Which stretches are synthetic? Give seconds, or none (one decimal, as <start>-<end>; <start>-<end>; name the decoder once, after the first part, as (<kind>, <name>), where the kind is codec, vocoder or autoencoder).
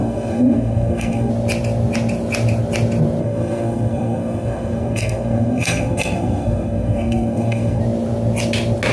0.0-1.3 (codec, SNAC); 3.2-7.8